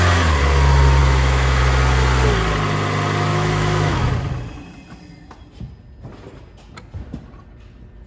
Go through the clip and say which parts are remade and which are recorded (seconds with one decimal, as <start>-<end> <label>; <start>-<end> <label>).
0.0-1.0 recorded; 1.0-1.6 remade; 1.6-3.3 recorded; 3.3-4.1 remade; 4.1-8.1 recorded